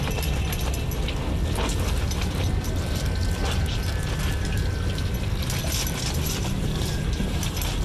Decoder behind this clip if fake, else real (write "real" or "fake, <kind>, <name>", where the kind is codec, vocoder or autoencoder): real